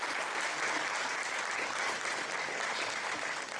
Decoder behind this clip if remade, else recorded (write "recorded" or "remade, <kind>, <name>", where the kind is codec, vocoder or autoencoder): recorded